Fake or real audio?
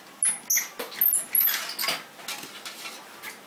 real